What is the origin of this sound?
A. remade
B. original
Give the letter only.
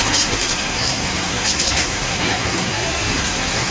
A